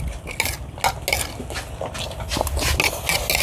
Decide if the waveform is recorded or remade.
recorded